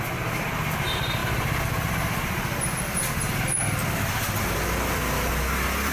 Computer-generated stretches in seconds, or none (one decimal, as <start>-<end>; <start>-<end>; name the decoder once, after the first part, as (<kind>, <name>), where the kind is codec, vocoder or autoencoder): none